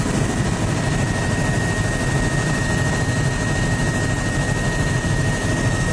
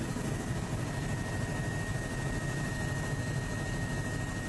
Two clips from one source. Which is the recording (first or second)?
second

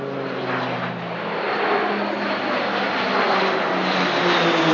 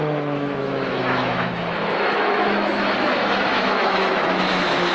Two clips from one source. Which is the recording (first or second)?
first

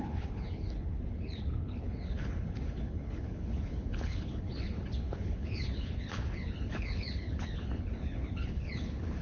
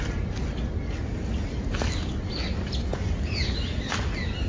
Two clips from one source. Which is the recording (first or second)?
second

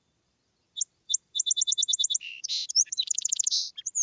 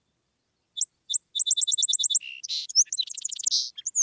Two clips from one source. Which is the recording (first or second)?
second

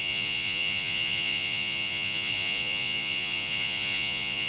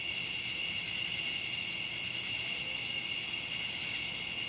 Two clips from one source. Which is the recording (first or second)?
second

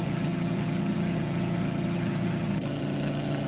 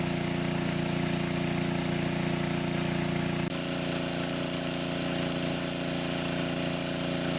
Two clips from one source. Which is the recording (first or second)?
second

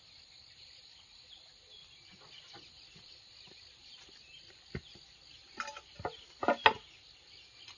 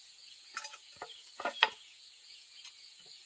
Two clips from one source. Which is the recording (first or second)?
first